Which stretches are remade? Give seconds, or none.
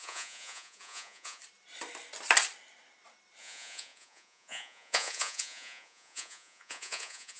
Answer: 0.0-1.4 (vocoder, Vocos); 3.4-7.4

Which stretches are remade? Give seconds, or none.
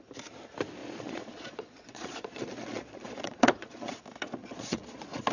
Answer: 0.8-4.0 (vocoder, Vocos); 4.4-5.3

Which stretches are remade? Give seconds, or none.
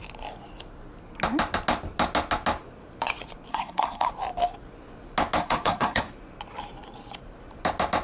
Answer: 3.5-4.1 (codec, SNAC); 5.4-6.1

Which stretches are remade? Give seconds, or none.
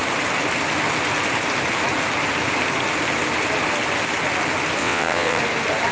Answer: 4.8-5.4 (vocoder, WaveNeXt)